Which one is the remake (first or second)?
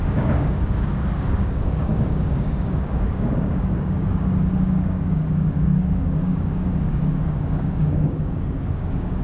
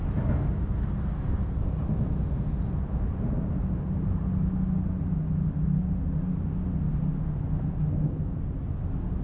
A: first